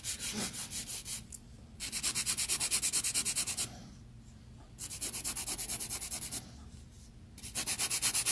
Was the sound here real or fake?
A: real